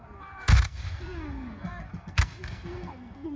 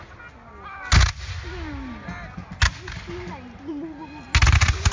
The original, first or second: second